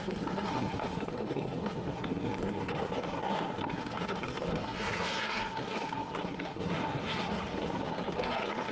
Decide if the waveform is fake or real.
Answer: fake